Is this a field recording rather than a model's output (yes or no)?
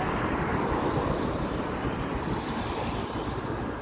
yes